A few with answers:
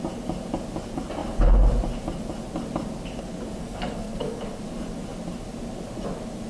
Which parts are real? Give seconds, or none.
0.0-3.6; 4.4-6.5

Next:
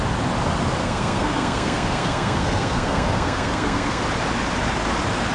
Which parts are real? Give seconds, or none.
0.0-0.8; 4.0-5.3

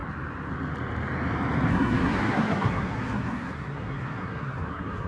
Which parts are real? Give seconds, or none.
0.0-1.7

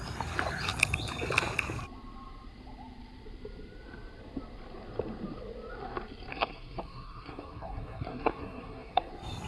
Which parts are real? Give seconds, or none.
0.0-6.3; 9.1-9.5

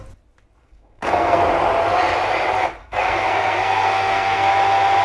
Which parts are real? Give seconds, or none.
0.0-0.6; 1.4-2.8; 4.5-5.0

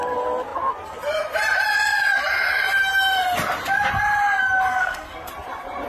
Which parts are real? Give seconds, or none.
0.0-4.7; 5.3-5.9

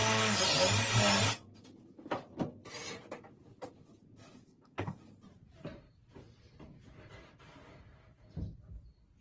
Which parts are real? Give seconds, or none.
0.0-4.4; 5.0-9.2

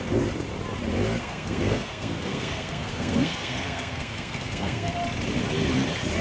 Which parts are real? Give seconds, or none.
0.0-1.2; 4.9-6.2